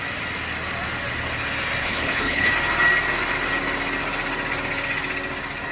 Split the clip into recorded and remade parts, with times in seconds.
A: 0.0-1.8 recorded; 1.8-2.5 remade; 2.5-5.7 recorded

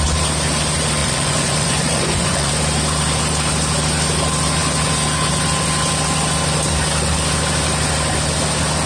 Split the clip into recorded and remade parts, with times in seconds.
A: 0.0-1.0 recorded; 1.0-2.5 remade; 2.5-8.9 recorded

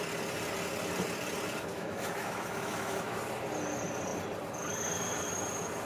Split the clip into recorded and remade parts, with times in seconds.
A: 0.0-1.7 recorded; 1.7-3.2 remade; 3.2-5.9 recorded